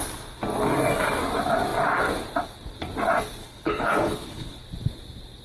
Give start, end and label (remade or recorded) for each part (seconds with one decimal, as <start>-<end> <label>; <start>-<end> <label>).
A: 0.0-3.4 recorded; 3.4-4.6 remade; 4.6-5.4 recorded